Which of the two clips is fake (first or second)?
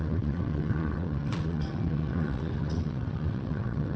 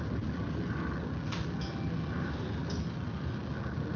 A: first